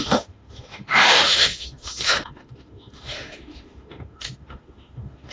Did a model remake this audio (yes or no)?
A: yes